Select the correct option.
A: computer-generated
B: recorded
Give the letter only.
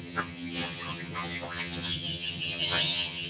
A